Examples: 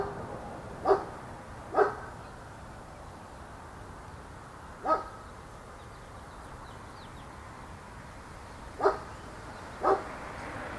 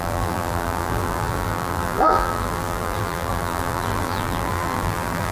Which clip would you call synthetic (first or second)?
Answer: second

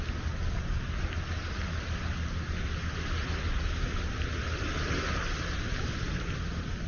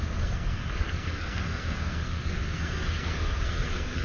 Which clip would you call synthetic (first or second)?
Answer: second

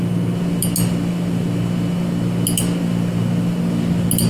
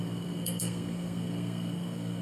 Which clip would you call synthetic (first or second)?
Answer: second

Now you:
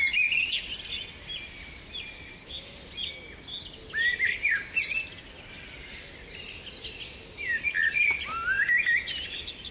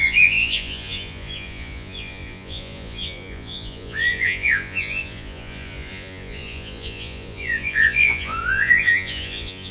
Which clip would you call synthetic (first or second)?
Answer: second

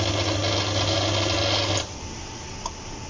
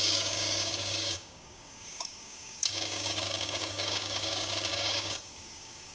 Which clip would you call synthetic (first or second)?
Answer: second